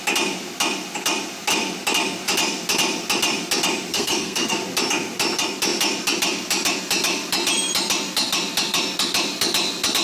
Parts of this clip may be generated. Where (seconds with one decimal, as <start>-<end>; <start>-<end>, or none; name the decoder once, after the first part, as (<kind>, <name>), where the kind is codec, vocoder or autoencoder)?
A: 3.9-4.6 (codec, SNAC)